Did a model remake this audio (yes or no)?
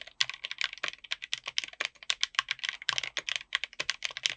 no